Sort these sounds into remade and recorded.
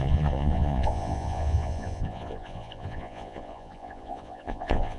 remade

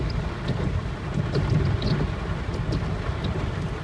recorded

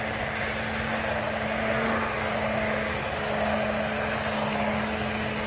recorded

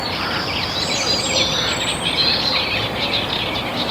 recorded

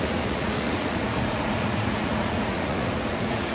remade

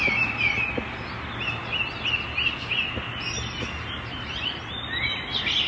recorded